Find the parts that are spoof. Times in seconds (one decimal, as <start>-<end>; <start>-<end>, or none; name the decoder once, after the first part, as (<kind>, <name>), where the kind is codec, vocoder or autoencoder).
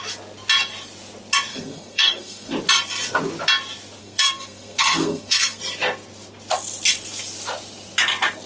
1.5-2.5 (codec, SNAC); 4.0-5.6